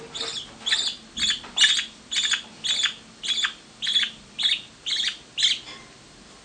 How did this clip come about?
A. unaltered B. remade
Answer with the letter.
A